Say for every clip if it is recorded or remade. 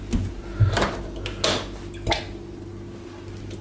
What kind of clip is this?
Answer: recorded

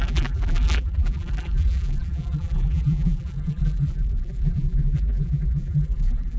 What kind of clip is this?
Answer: remade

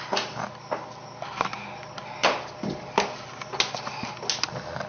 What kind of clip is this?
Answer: recorded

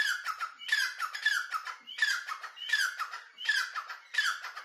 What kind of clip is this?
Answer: recorded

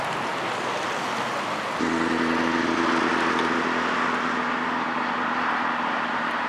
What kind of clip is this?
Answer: recorded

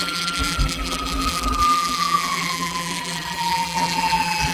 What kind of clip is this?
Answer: remade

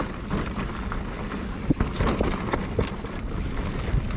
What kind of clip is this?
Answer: recorded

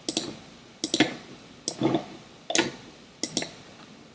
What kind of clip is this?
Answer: recorded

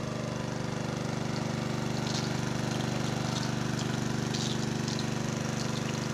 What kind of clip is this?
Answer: recorded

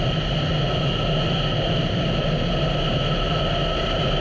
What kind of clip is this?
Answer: recorded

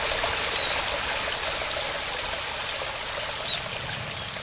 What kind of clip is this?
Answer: recorded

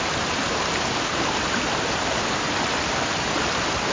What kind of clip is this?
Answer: remade